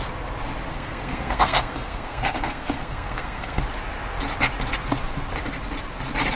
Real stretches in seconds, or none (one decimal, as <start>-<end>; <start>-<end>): 0.0-0.7; 3.6-6.4